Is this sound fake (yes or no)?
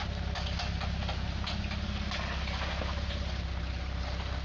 no